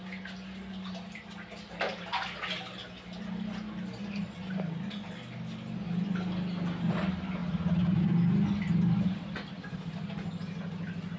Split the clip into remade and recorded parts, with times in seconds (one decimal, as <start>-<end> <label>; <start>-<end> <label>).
0.0-11.2 recorded